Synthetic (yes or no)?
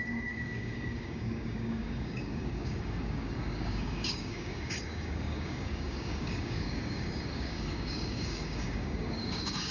yes